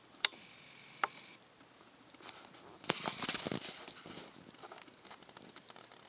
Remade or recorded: recorded